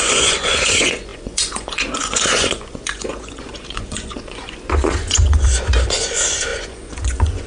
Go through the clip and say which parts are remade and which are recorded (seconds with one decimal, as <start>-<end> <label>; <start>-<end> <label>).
0.0-7.5 remade